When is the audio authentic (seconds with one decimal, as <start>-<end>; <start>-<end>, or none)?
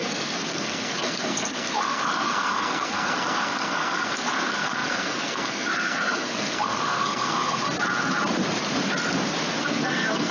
7.6-9.6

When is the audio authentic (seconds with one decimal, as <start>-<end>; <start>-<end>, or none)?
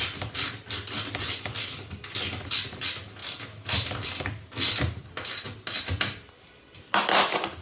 0.0-7.6